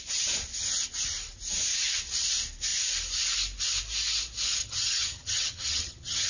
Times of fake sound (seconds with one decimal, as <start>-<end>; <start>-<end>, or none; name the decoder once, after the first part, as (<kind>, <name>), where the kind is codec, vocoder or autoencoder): 4.6-6.3 (vocoder, HiFi-GAN)